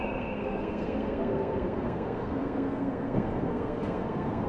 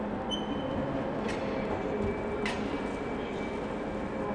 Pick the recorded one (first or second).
second